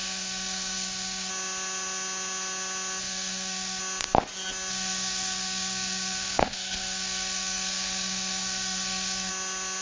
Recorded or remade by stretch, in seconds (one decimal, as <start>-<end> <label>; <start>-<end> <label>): 0.0-1.3 remade; 1.3-3.0 recorded; 3.0-3.8 remade; 3.8-4.7 recorded; 4.7-9.3 remade; 9.3-9.8 recorded